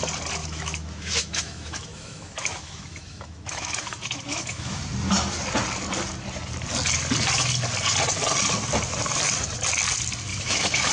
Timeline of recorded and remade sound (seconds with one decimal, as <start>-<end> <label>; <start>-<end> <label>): 0.0-0.4 recorded; 0.4-4.8 remade; 4.8-10.3 recorded; 10.3-10.9 remade